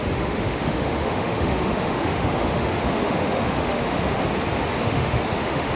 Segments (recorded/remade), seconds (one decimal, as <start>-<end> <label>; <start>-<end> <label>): 0.0-4.1 remade; 4.1-4.8 recorded; 4.8-5.8 remade